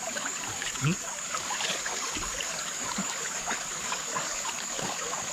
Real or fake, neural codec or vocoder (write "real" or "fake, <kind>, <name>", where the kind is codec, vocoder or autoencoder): fake, codec, DAC